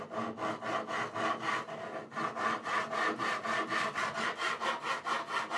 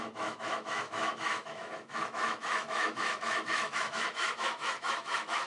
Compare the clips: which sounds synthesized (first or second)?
second